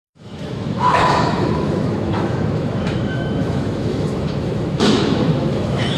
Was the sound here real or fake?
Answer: fake